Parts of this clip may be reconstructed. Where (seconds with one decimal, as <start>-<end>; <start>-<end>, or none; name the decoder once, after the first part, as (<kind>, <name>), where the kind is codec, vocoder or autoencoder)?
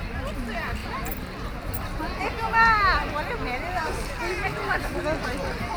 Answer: none